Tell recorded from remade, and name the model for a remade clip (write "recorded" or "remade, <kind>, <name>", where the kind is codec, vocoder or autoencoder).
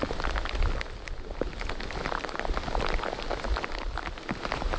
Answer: recorded